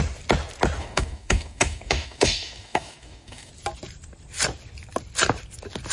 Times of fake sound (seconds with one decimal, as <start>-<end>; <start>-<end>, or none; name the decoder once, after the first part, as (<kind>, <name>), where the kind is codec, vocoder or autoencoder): 0.8-3.5 (codec, DAC)